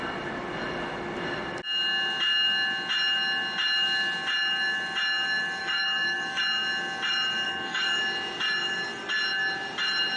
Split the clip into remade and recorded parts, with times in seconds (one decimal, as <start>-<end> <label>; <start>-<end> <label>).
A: 0.0-5.6 recorded; 5.6-6.4 remade; 6.4-7.4 recorded; 7.4-8.0 remade; 8.0-10.2 recorded